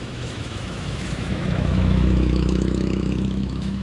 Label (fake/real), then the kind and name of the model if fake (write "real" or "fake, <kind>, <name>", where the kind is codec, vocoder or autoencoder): fake, autoencoder, DAC-VAE